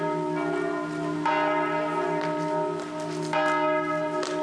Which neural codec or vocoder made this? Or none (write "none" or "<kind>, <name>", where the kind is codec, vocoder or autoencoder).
none